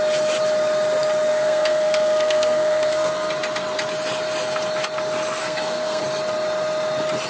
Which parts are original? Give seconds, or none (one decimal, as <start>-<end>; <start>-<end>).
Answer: 0.0-1.3; 3.3-5.4; 6.0-7.3